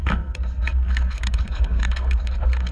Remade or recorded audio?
remade